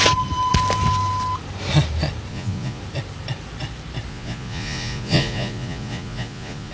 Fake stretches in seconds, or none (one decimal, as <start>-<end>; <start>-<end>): 2.3-2.8; 4.1-6.7